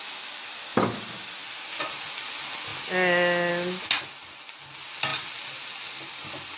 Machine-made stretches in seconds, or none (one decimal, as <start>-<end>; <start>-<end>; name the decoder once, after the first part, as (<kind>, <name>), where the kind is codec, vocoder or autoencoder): none